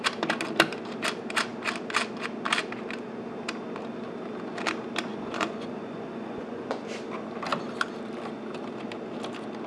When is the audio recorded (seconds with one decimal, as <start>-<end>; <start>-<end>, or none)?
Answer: 0.0-5.1; 6.7-9.7